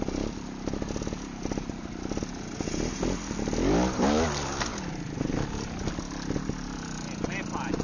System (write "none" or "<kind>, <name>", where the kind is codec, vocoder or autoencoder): none